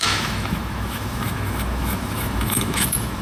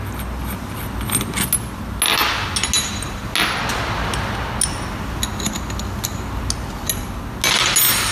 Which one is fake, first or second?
first